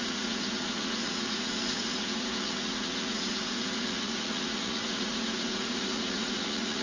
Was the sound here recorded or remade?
remade